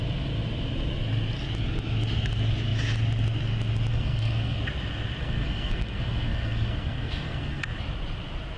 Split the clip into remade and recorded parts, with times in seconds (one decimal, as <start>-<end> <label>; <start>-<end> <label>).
0.0-3.9 recorded; 3.9-4.6 remade; 4.6-5.2 recorded; 5.2-7.6 remade; 7.6-8.6 recorded